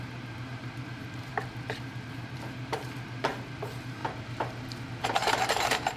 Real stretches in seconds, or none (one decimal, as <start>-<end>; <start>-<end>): 1.3-2.1

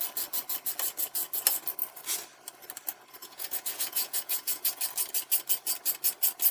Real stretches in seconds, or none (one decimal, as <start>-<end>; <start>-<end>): 0.0-3.2; 4.8-6.5